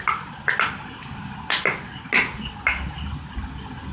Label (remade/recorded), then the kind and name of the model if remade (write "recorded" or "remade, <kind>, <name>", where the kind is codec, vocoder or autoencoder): recorded